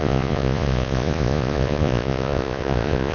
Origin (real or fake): fake